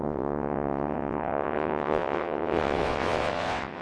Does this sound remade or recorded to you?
remade